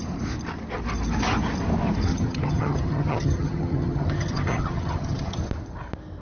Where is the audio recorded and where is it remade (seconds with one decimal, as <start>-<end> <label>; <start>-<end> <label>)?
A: 0.0-2.1 recorded; 2.1-5.4 remade; 5.4-6.2 recorded